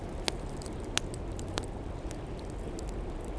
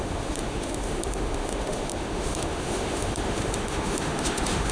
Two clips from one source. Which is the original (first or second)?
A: first